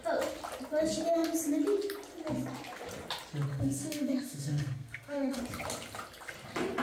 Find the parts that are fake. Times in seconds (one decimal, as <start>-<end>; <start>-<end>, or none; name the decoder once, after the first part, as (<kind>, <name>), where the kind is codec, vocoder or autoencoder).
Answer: 3.5-5.4 (codec, SNAC)